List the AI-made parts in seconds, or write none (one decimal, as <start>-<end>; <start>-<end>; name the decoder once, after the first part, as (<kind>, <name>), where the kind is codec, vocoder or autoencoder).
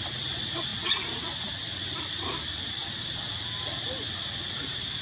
0.0-0.7 (vocoder, BigVGAN v2); 1.7-2.8; 3.4-5.0